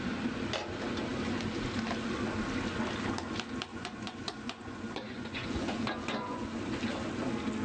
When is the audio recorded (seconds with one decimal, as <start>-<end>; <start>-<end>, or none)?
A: 0.0-3.7; 6.6-7.6